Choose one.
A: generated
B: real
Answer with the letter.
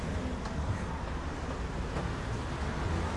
B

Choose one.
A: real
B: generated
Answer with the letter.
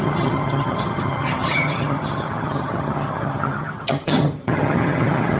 B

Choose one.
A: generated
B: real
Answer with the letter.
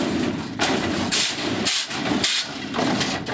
B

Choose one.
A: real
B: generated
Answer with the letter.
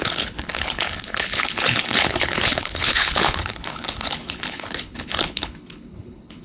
B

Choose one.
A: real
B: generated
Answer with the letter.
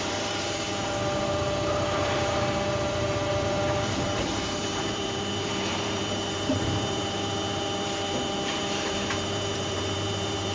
B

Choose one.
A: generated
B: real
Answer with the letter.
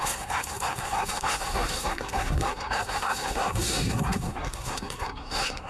A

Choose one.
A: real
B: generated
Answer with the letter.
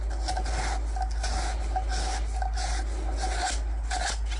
A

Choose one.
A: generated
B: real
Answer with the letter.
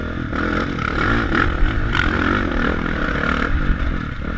B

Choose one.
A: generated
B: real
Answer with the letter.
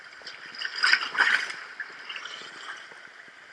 B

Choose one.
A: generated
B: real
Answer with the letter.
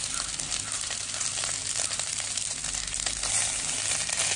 B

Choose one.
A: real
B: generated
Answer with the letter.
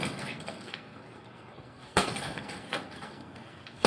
B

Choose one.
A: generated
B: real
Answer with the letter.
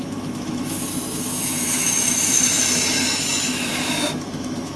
A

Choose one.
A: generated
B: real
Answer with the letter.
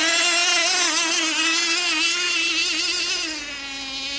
B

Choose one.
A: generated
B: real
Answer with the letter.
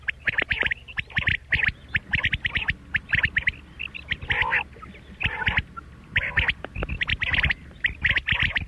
B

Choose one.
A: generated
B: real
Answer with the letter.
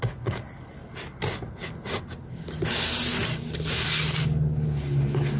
B